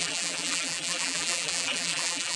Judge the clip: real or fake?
fake